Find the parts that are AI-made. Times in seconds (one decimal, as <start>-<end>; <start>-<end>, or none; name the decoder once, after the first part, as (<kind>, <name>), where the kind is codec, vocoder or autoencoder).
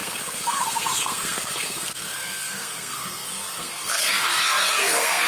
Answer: 0.0-5.3 (codec, SNAC)